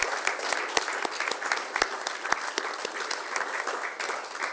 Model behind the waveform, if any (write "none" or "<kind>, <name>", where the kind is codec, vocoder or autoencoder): none